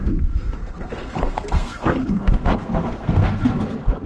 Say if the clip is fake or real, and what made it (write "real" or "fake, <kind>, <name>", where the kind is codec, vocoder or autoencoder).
fake, codec, SNAC